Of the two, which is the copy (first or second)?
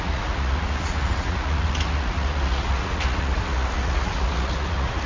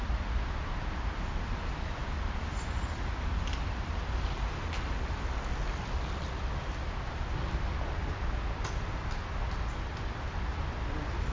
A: first